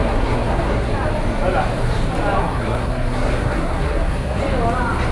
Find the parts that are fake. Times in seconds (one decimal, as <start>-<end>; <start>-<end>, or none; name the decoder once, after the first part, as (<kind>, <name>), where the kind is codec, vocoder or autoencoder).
0.0-0.9 (codec, SNAC); 2.4-4.4